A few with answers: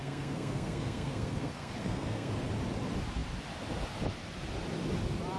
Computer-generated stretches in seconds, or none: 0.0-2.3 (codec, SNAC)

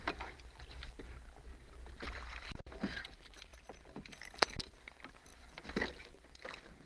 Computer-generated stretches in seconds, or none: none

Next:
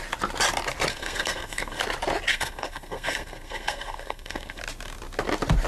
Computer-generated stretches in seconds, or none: 0.9-1.8 (codec, SNAC); 2.3-4.6

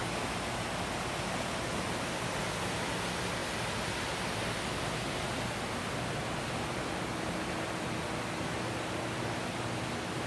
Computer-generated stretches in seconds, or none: none